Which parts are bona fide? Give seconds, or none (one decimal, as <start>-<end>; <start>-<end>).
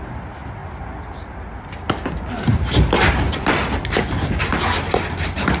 0.0-5.6